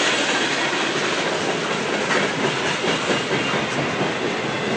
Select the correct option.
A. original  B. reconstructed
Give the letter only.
A